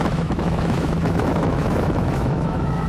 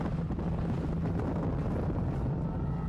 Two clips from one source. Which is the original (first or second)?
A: second